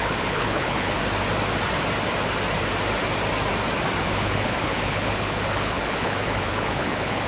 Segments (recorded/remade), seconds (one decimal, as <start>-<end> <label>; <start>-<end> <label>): 0.0-1.0 remade; 1.0-4.0 recorded; 4.0-7.3 remade